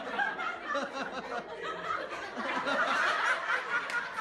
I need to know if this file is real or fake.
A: real